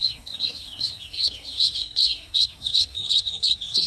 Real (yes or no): no